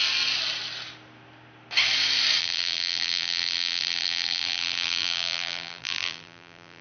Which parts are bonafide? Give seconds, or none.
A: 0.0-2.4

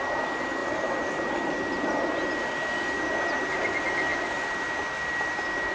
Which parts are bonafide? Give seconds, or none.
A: 0.0-0.6; 1.5-5.7

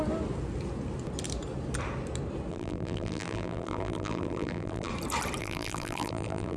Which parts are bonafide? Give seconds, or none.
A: 0.0-2.5; 4.9-5.4

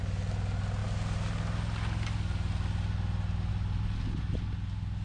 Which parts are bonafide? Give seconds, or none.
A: 0.0-5.0

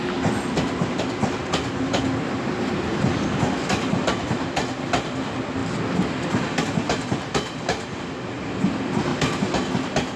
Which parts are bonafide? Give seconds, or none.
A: 0.0-9.1